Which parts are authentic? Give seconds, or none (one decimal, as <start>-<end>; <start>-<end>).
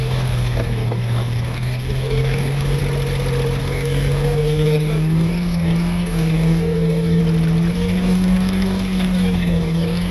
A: 2.8-3.6; 7.2-7.7